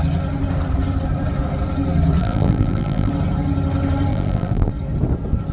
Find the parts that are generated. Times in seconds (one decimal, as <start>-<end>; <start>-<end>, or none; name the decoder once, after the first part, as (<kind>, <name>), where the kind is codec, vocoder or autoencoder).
2.2-3.1 (vocoder, BigVGAN v2); 4.1-4.7